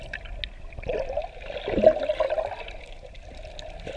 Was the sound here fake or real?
real